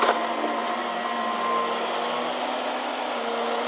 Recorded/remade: recorded